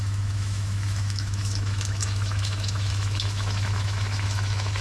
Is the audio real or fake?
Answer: fake